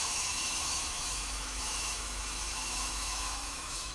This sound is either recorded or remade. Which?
remade